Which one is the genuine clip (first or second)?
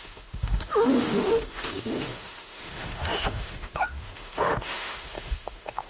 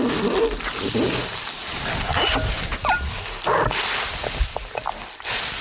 second